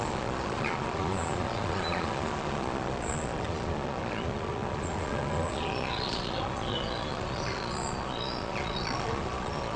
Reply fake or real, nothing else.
fake